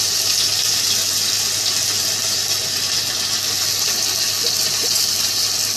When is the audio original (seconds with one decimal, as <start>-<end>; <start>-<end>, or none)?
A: 0.0-5.8